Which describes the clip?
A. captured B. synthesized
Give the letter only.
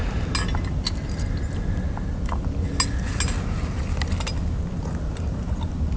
A